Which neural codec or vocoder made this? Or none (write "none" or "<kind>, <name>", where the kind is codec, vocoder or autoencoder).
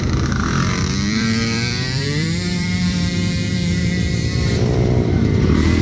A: vocoder, BigVGAN v2